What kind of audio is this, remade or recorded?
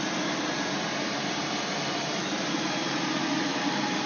recorded